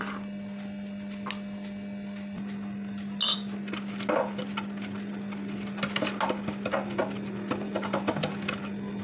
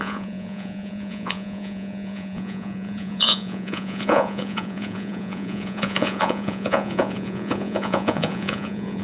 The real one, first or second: first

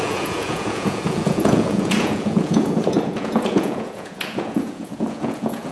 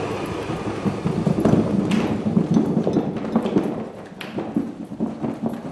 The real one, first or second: second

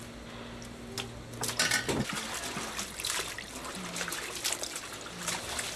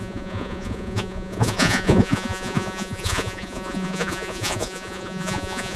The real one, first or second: first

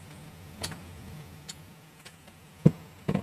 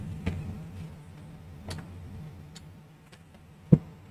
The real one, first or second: second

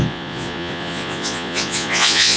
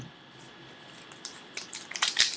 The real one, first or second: second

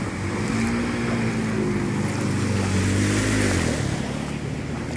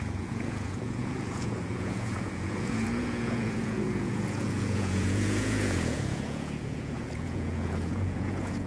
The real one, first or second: first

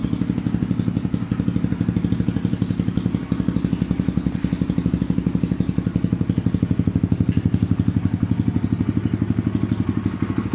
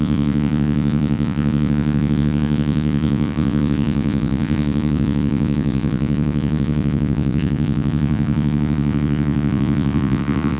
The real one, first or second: first